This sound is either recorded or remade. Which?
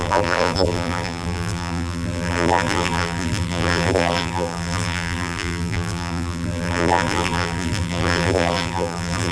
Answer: remade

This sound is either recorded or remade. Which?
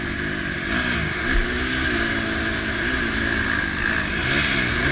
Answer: recorded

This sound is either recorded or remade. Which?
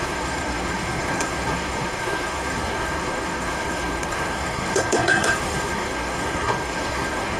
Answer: remade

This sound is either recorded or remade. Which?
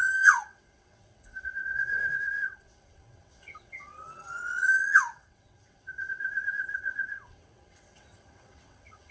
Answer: remade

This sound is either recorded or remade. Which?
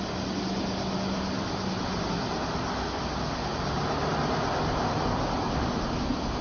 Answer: recorded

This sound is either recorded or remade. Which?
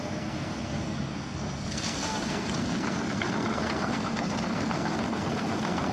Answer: remade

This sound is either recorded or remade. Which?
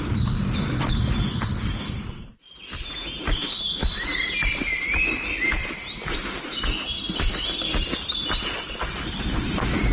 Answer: recorded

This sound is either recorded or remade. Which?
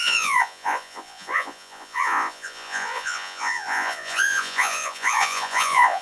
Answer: remade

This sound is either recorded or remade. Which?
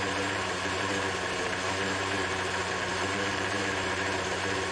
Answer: remade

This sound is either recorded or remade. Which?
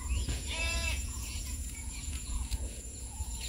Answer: remade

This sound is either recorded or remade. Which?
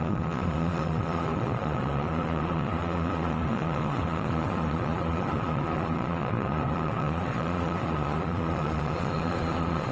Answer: remade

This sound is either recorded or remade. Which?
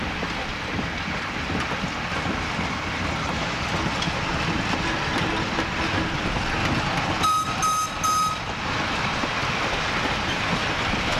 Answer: recorded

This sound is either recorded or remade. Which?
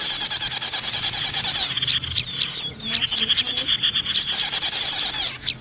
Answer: recorded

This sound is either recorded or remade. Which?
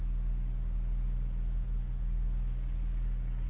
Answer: recorded